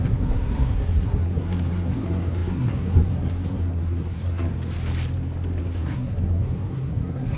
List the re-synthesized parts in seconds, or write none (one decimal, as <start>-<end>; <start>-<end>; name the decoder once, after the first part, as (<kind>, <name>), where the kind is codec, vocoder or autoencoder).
0.0-4.5 (codec, SNAC); 5.6-7.4